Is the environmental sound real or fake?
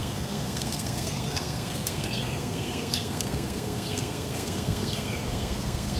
fake